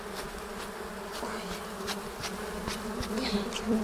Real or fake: real